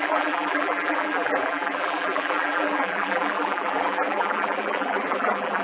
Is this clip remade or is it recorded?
remade